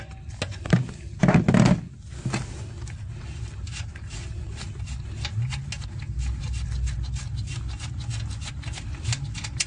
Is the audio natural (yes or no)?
yes